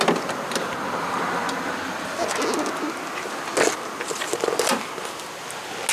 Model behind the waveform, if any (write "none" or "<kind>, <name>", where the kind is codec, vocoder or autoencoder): none